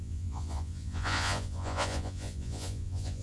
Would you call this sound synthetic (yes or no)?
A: yes